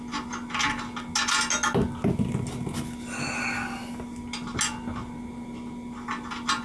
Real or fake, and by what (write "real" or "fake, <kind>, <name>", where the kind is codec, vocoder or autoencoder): real